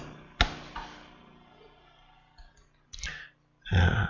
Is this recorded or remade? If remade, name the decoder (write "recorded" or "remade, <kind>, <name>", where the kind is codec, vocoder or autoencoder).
recorded